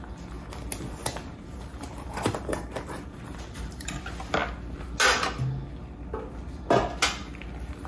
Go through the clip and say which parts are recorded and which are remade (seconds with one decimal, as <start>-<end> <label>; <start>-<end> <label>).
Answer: 0.0-1.0 recorded; 1.0-4.0 remade; 4.0-7.9 recorded